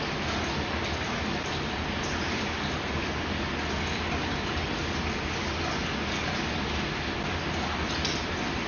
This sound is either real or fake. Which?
real